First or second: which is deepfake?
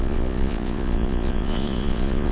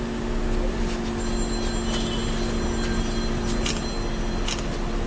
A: first